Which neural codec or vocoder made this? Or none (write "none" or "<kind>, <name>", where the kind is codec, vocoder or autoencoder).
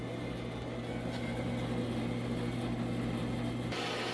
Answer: none